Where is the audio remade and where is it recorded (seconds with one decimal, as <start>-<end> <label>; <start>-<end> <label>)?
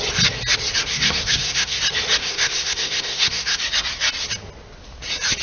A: 0.0-0.9 recorded; 0.9-1.8 remade; 1.8-2.2 recorded; 2.2-3.6 remade; 3.6-5.4 recorded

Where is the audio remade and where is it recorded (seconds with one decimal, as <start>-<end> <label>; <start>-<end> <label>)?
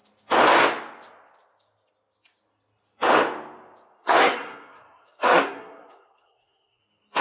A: 0.0-4.0 recorded; 4.0-6.8 remade; 6.8-7.2 recorded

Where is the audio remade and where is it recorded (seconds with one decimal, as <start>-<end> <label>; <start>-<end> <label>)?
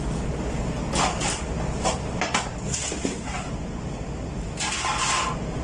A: 0.0-5.6 recorded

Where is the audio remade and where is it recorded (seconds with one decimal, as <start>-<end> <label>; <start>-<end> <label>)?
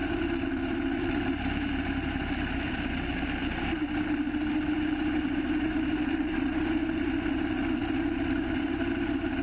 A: 0.0-9.4 remade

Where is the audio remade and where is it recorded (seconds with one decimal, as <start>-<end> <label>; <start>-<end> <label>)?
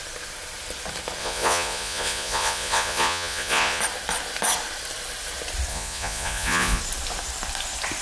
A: 0.0-1.2 recorded; 1.2-3.8 remade; 3.8-5.7 recorded; 5.7-6.8 remade; 6.8-8.0 recorded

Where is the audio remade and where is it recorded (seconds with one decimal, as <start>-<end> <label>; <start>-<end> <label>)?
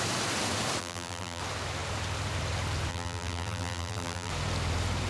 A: 0.0-0.8 recorded; 0.8-1.4 remade; 1.4-2.9 recorded; 2.9-4.3 remade; 4.3-5.1 recorded